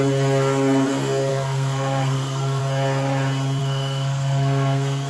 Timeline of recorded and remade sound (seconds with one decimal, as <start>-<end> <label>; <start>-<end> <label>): 0.0-1.3 recorded; 1.3-2.6 remade; 2.6-3.6 recorded; 3.6-5.1 remade